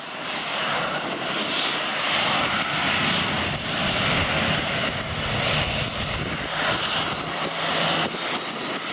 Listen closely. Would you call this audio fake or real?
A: real